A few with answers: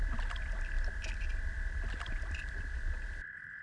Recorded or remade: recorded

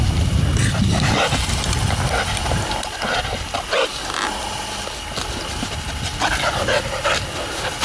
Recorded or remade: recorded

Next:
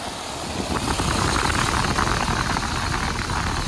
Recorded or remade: recorded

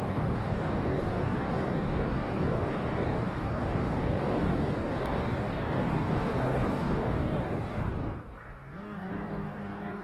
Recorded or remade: remade